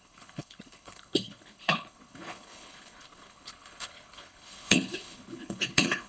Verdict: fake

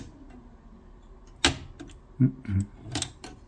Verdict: real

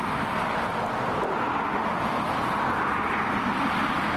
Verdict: real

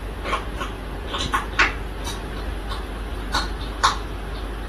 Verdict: real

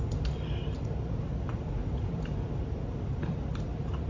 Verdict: fake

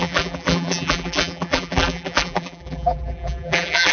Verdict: fake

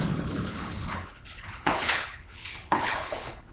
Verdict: fake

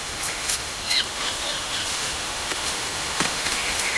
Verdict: fake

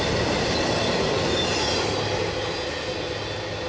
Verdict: real